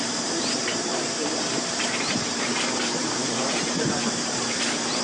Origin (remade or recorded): remade